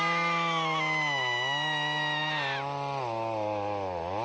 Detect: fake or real real